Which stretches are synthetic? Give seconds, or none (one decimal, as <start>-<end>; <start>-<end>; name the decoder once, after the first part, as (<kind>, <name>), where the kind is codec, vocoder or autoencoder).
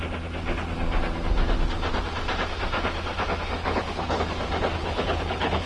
3.6-4.2 (codec, HILCodec); 4.8-5.7